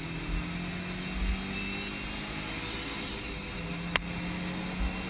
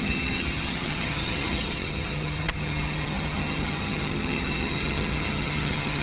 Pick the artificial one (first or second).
second